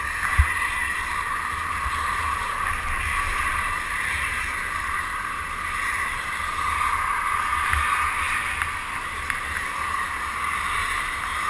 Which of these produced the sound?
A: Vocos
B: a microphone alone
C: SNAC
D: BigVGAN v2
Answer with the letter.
D